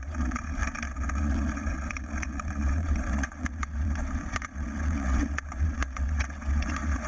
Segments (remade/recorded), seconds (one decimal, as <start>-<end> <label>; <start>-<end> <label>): 0.0-0.6 remade; 0.6-1.2 recorded; 1.2-7.1 remade